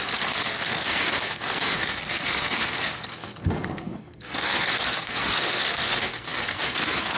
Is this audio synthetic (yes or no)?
yes